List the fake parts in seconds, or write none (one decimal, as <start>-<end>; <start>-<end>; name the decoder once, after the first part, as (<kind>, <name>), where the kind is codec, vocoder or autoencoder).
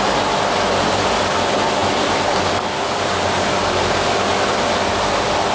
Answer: none